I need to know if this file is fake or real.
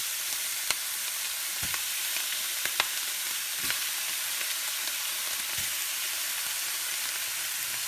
real